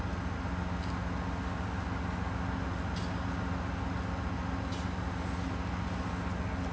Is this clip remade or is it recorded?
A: recorded